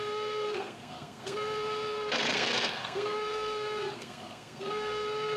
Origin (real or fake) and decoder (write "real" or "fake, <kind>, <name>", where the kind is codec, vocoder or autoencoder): fake, codec, SNAC